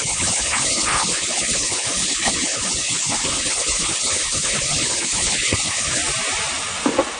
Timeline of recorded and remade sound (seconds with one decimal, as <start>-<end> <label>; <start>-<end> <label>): 0.0-6.0 remade; 6.0-7.2 recorded

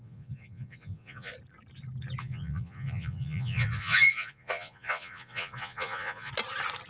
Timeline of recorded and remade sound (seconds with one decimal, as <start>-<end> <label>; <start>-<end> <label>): 0.0-1.3 remade; 1.3-2.2 recorded; 2.2-6.3 remade; 6.3-6.9 recorded

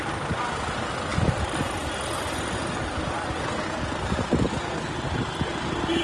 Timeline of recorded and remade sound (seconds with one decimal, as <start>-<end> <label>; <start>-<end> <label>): 0.0-6.0 recorded